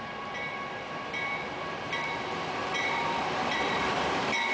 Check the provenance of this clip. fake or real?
fake